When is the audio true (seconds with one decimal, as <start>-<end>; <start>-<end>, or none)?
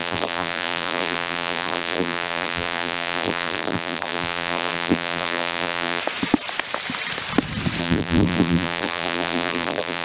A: 6.0-7.8